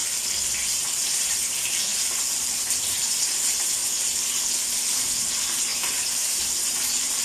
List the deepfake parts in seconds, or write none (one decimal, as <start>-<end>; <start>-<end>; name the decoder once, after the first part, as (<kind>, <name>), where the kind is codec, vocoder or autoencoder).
0.7-3.8 (vocoder, BigVGAN v2); 5.2-7.2